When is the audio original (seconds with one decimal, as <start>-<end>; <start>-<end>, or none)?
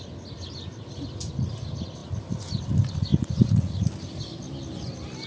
0.0-3.1; 3.9-5.3